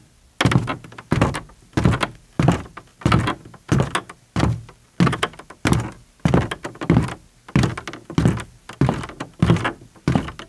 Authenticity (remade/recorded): recorded